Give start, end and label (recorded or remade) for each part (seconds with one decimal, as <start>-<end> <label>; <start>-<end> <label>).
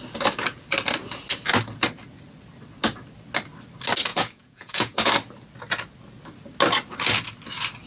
0.0-4.1 recorded; 4.1-5.1 remade; 5.1-7.9 recorded